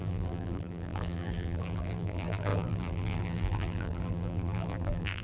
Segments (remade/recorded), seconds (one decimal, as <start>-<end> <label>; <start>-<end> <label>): 0.0-5.2 remade